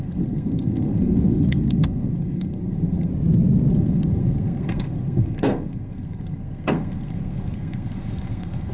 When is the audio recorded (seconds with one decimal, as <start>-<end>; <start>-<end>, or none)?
3.1-3.7